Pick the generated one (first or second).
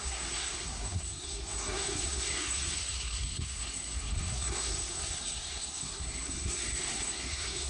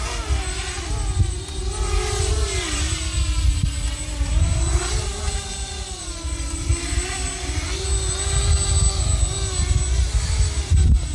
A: first